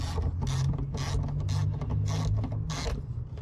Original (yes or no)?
yes